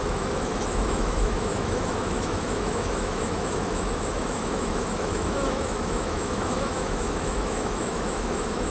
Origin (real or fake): fake